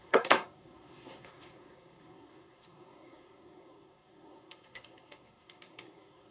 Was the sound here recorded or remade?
remade